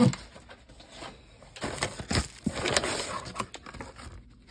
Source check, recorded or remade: recorded